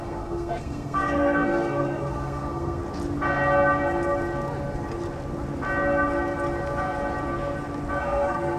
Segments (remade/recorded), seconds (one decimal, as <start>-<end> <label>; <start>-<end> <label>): 0.0-2.8 remade; 2.8-8.0 recorded; 8.0-8.6 remade

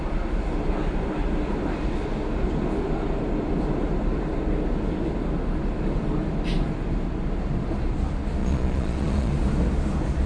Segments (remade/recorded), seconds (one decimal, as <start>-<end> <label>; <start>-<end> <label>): 0.0-8.4 recorded; 8.4-9.3 remade; 9.3-10.3 recorded

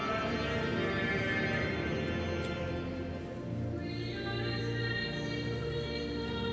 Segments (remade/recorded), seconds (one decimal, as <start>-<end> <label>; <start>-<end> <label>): 0.0-6.5 recorded

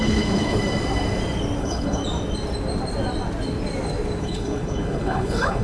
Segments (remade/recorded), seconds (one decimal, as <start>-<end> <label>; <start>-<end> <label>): 0.0-0.6 remade; 0.6-1.6 recorded; 1.6-2.0 remade; 2.0-4.2 recorded; 4.2-5.6 remade

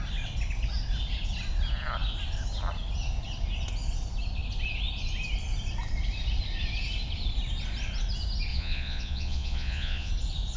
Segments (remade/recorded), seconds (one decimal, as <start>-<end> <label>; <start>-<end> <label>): 0.0-8.5 recorded; 8.5-10.1 remade; 10.1-10.6 recorded

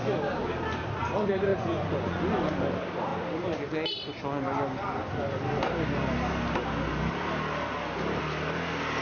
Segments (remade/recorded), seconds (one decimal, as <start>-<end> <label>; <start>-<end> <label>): 0.0-1.5 recorded; 1.5-2.2 remade; 2.2-9.0 recorded

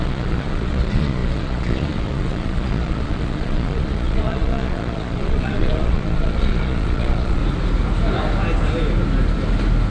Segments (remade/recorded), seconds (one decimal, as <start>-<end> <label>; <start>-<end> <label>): 0.0-7.4 remade; 7.4-9.9 recorded

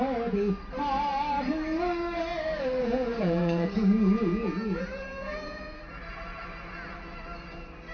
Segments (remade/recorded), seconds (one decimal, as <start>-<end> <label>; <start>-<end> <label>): 0.0-2.8 recorded; 2.8-5.8 remade; 5.8-7.9 recorded